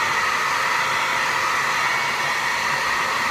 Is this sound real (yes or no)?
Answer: yes